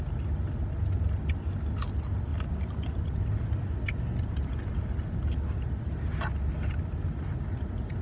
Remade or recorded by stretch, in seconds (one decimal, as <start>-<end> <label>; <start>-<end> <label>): 0.0-2.3 recorded; 2.3-5.8 remade; 5.8-8.0 recorded